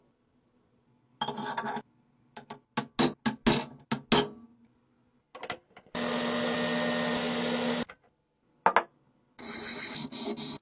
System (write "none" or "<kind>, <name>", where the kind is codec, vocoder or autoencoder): none